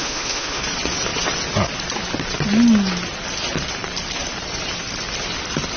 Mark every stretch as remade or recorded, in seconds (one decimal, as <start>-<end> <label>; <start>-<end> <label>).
0.0-0.6 remade; 0.6-5.8 recorded